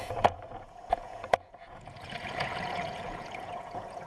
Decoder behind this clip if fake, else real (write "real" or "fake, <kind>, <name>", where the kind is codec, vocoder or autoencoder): fake, vocoder, Vocos